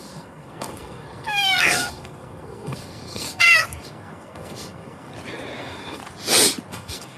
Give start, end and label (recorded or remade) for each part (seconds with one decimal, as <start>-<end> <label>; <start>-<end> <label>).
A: 0.0-5.1 remade; 5.1-5.6 recorded; 5.6-6.0 remade; 6.0-6.7 recorded; 6.7-7.2 remade